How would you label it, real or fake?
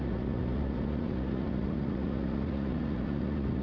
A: fake